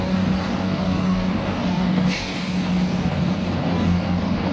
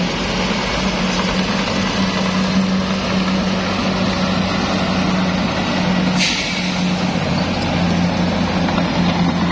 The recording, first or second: second